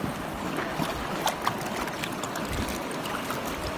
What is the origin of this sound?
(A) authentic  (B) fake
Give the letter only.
A